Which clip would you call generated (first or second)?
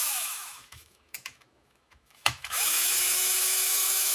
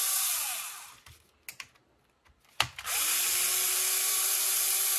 first